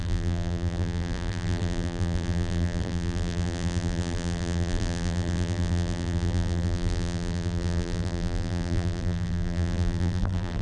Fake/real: fake